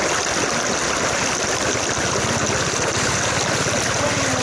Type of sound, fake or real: real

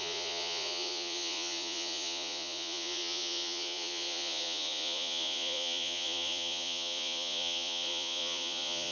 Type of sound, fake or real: fake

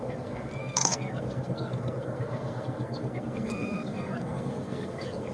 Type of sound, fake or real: fake